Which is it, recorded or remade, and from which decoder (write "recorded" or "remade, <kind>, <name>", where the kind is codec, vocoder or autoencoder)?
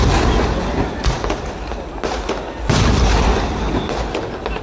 recorded